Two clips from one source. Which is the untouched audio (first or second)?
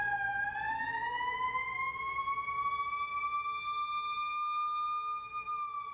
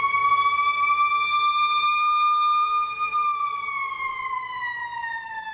first